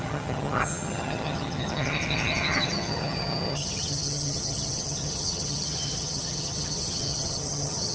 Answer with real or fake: fake